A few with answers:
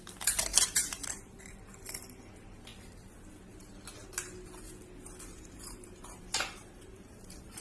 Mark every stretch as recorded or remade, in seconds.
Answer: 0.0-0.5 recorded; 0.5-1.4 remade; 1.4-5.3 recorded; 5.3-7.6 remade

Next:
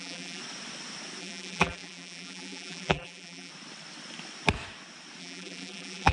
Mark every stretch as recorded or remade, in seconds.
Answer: 0.0-0.4 remade; 0.4-1.2 recorded; 1.2-3.5 remade; 3.5-5.2 recorded; 5.2-6.1 remade

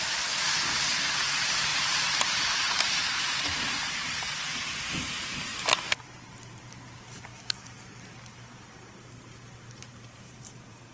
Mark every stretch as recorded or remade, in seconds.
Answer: 0.0-5.5 remade; 5.5-6.0 recorded; 6.0-10.9 remade

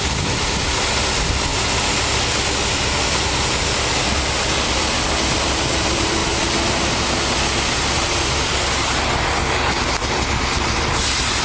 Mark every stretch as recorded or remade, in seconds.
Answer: 0.0-11.4 recorded

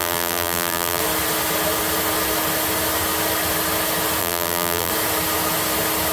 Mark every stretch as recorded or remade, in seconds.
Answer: 0.0-1.0 remade; 1.0-4.2 recorded; 4.2-4.9 remade; 4.9-6.1 recorded

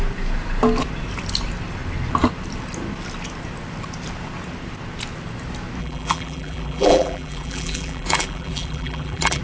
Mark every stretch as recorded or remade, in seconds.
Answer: 0.0-5.8 recorded; 5.8-9.4 remade